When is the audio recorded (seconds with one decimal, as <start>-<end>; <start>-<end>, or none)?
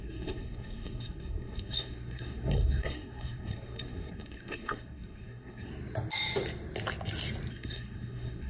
5.7-7.5